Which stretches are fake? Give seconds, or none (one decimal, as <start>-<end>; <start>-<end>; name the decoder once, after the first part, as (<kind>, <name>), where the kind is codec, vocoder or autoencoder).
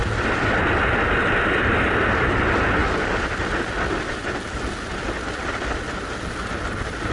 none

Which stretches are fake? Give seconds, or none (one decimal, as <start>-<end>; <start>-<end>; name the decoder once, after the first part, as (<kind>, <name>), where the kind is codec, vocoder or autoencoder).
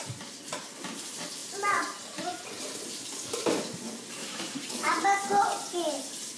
4.2-4.9 (codec, DAC)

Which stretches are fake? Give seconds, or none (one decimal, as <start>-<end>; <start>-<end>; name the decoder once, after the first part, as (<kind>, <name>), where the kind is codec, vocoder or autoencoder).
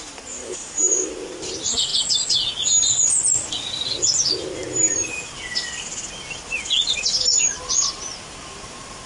0.4-1.1 (codec, DAC)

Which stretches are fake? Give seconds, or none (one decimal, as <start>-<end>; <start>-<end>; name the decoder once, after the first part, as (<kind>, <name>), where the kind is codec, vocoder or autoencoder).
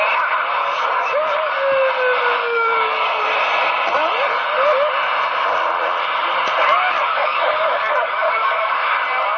0.6-1.5 (codec, DAC); 2.4-3.2; 6.7-8.9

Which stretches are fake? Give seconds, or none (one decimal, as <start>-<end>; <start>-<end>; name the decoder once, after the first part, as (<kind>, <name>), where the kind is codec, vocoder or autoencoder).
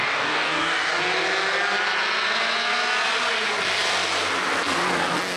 0.0-1.0 (codec, DAC)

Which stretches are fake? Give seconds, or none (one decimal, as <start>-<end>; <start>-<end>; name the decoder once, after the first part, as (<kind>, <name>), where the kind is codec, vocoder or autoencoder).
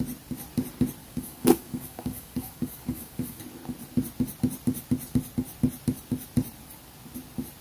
1.0-3.4 (codec, DAC)